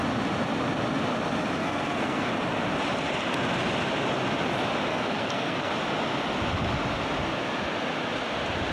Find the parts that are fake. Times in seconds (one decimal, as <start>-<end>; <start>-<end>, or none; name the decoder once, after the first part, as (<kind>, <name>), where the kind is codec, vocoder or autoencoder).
1.6-2.3 (codec, SNAC); 4.9-5.7